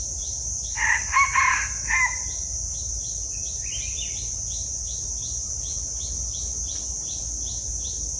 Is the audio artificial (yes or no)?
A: no